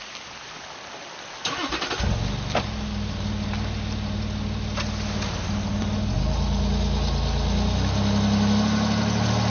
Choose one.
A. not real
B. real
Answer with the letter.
B